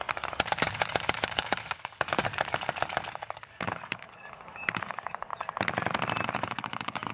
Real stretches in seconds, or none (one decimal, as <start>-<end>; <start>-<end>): 5.3-6.3